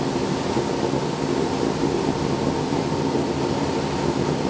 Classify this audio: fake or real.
real